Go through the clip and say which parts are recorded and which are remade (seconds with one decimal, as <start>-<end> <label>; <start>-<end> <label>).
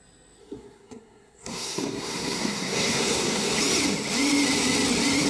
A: 0.0-0.4 recorded; 0.4-3.6 remade; 3.6-5.3 recorded